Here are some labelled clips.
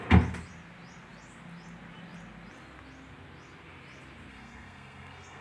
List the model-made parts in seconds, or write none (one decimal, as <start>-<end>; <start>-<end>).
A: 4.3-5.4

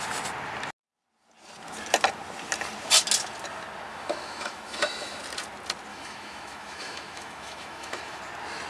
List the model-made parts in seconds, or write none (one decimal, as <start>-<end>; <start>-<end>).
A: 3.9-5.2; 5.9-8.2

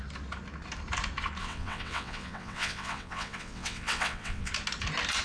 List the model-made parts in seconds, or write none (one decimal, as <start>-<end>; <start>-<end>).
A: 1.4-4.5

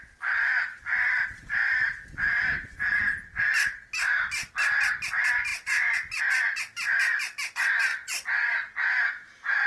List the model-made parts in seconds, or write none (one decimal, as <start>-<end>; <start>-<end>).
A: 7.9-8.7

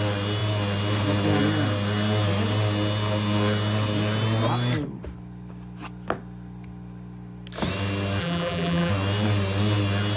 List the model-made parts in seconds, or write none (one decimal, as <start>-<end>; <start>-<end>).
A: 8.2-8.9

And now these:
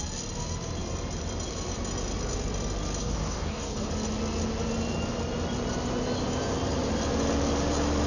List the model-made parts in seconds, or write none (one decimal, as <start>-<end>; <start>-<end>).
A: 3.0-3.9

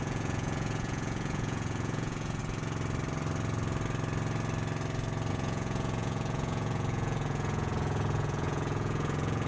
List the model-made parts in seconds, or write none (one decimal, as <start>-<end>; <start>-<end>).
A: 0.0-2.4; 5.3-9.5

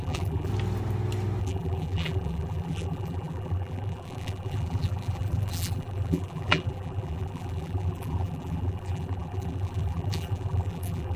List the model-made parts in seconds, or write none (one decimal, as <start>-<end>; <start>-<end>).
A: 0.0-0.5; 1.4-11.2